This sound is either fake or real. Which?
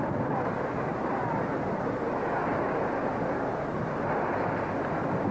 real